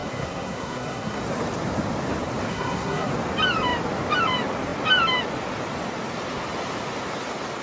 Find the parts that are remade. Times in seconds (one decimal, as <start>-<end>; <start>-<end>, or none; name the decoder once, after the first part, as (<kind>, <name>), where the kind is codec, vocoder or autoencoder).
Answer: 0.0-1.2 (codec, SNAC); 2.5-3.1